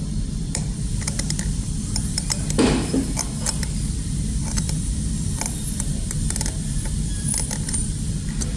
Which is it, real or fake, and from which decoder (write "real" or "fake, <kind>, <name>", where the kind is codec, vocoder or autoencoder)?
fake, vocoder, BigVGAN v2